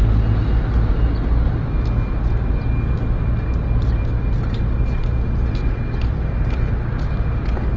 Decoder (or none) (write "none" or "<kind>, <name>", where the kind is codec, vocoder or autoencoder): none